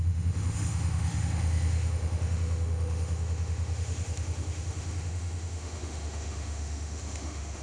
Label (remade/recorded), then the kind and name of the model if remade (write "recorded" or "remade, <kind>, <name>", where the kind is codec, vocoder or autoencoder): remade, autoencoder, DAC-VAE